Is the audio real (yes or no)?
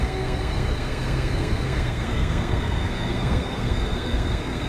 no